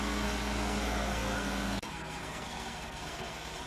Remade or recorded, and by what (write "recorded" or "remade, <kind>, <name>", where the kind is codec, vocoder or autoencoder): remade, codec, SNAC